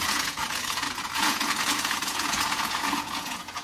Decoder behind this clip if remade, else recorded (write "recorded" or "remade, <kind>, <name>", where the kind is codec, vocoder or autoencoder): remade, vocoder, Vocos